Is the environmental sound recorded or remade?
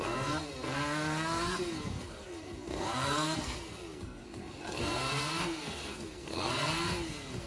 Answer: remade